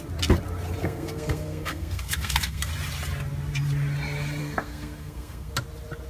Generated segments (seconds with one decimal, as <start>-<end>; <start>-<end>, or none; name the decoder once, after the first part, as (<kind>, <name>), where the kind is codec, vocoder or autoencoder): 0.8-2.7 (codec, SNAC); 4.4-5.5